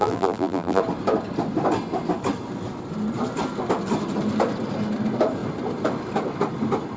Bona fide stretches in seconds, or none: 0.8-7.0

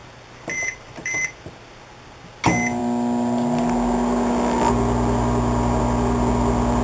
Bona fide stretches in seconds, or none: 1.5-6.8

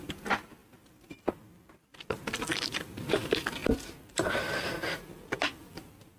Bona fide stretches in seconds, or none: 0.6-1.3